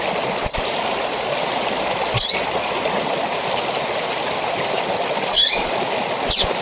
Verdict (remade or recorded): recorded